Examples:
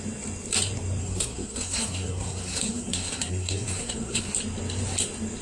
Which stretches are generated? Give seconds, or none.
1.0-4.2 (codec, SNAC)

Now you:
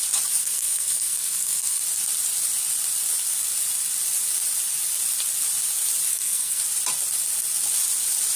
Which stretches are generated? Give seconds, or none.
0.4-1.8 (codec, SNAC); 6.1-6.6

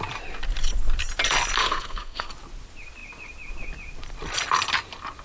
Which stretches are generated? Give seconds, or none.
1.6-2.3 (codec, SNAC)